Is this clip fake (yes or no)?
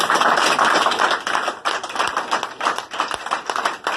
no